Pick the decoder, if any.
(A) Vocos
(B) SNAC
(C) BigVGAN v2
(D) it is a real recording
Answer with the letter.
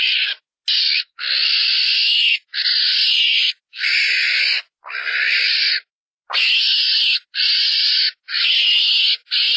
D